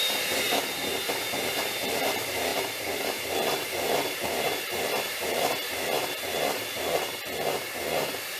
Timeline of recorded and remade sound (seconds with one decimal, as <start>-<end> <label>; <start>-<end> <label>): 0.0-8.4 remade